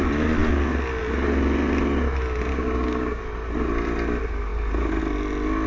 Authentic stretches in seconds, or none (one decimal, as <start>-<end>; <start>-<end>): 0.0-2.5; 3.2-5.7